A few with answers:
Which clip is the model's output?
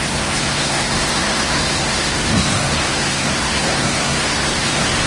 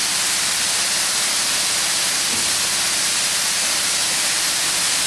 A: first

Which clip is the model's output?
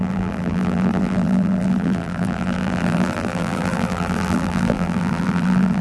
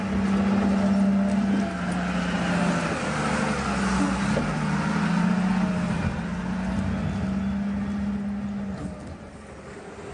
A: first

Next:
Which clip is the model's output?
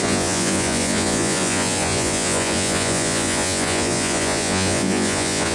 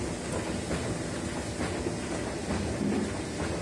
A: first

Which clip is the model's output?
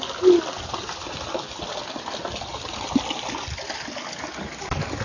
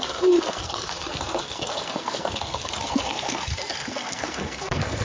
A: second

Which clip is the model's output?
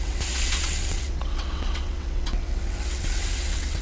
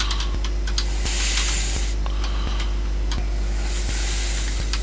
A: first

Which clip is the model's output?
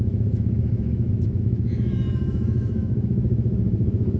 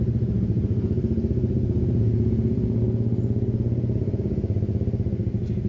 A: first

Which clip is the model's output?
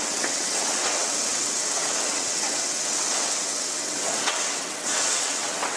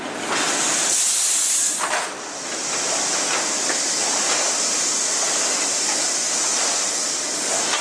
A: first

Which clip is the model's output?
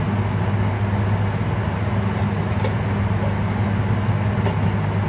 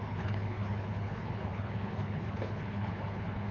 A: second